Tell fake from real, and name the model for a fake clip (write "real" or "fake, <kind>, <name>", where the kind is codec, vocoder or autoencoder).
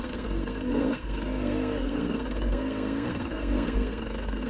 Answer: fake, codec, SNAC